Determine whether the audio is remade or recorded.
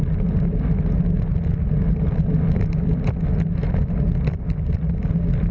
recorded